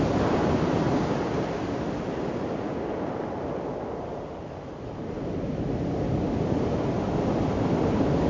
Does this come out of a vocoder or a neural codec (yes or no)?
no